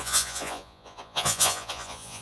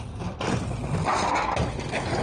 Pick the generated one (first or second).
first